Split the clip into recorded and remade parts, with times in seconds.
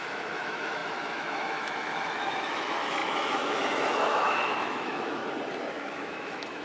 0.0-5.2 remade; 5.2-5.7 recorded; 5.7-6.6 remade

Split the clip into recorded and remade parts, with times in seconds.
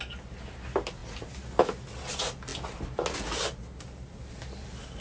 0.0-5.0 recorded